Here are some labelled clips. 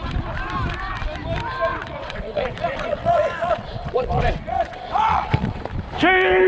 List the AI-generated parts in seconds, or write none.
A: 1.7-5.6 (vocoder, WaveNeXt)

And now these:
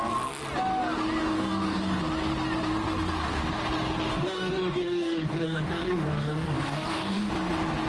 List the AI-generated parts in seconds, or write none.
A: 1.2-2.0 (codec, DAC); 4.1-7.3

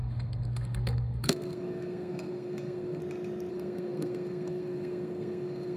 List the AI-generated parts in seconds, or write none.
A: 0.0-3.0 (codec, SNAC); 3.5-5.8